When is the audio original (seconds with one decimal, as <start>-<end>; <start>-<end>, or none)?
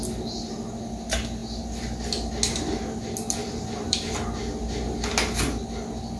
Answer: 0.0-3.4; 4.1-6.2